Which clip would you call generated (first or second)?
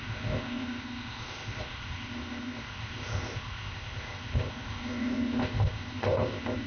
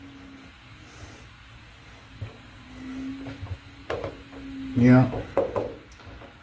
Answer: first